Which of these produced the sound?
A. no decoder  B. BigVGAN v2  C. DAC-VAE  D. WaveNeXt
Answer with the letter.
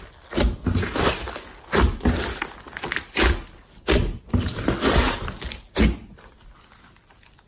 A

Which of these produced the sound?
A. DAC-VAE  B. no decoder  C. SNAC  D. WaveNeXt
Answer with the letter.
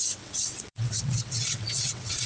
D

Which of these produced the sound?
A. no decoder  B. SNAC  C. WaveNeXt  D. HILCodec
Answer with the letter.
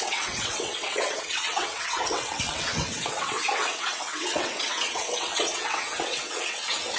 C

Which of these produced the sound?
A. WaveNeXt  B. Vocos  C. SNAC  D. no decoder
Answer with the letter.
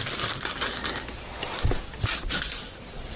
D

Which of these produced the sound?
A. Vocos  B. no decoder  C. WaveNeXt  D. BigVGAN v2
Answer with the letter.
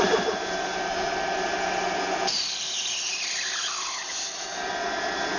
B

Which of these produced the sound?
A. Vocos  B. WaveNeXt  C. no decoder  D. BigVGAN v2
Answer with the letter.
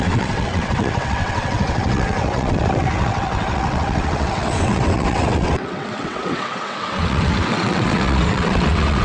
B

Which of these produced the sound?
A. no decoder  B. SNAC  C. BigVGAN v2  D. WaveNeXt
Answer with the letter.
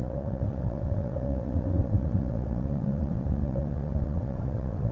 D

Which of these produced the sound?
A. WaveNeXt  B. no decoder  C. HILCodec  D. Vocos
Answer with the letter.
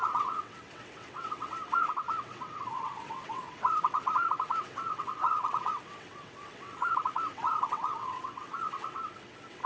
A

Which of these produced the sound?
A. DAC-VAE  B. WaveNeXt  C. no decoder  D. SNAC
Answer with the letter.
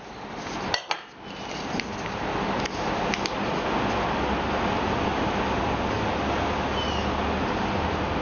C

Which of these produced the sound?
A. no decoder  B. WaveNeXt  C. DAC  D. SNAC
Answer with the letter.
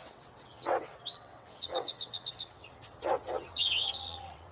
B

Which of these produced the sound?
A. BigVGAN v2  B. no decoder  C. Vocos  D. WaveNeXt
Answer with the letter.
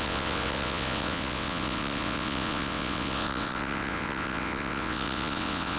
D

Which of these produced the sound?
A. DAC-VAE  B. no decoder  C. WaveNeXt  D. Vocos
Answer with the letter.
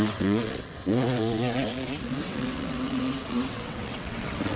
C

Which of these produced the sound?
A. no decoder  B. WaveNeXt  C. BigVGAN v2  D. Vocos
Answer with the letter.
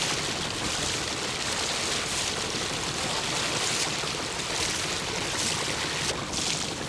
A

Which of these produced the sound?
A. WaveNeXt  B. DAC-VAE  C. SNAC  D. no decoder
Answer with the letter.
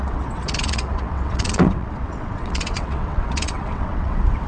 A